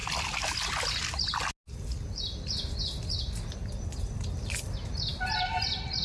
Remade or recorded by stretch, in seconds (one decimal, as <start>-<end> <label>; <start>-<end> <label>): 0.0-3.6 recorded; 3.6-4.6 remade; 4.6-5.1 recorded; 5.1-6.0 remade